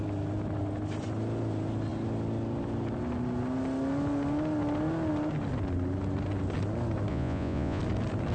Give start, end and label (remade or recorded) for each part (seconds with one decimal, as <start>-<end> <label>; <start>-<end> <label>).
0.0-7.1 recorded; 7.1-7.8 remade; 7.8-8.3 recorded